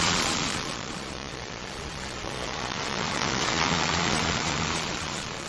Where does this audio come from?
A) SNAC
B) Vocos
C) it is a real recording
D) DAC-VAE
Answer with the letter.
B